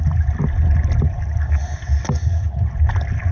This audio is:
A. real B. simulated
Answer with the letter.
A